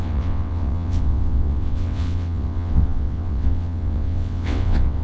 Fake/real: fake